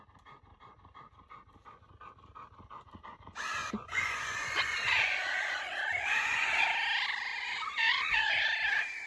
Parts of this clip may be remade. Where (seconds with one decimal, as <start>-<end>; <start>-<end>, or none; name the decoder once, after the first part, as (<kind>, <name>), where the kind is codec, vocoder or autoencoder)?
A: 3.6-6.6 (vocoder, Vocos); 7.3-8.4